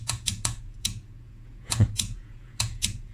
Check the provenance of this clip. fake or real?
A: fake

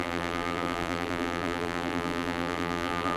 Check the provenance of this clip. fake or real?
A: fake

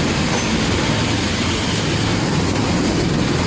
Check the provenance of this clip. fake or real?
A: real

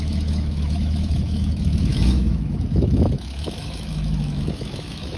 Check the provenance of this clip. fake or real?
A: fake